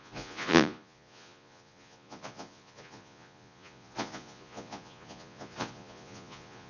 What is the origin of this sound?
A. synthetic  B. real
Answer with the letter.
A